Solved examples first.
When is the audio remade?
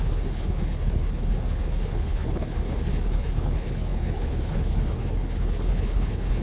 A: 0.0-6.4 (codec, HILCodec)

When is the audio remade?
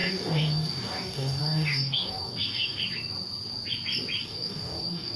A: 0.0-2.8 (codec, DAC); 4.2-5.2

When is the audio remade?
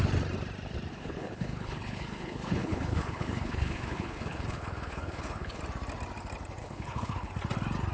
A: 0.9-5.6 (codec, HILCodec); 6.6-7.3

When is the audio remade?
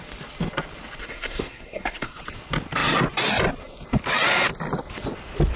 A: 1.0-2.2 (codec, SNAC)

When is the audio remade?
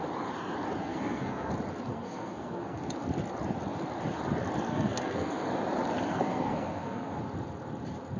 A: 0.8-1.5 (codec, SNAC); 1.9-2.8; 4.7-5.5; 6.1-7.2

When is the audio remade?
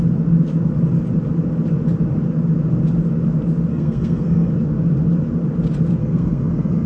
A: 3.7-4.5 (codec, SNAC); 6.0-6.9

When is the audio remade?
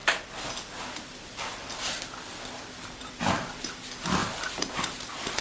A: none